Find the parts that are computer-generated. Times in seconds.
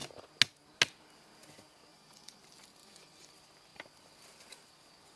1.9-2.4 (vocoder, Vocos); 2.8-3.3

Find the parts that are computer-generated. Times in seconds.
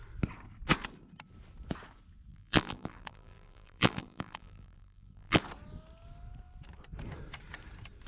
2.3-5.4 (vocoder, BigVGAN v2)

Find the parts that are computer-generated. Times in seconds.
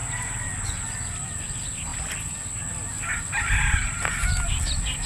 none